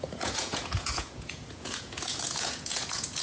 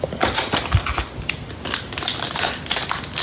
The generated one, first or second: first